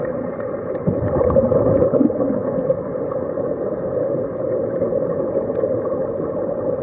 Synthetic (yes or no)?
no